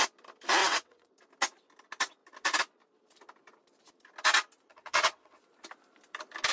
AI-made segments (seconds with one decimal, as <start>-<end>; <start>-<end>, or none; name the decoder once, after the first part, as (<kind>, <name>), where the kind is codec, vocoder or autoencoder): 0.6-1.1 (vocoder, WaveNeXt); 4.7-5.4